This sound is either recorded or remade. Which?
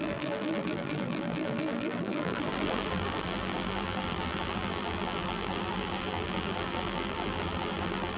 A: remade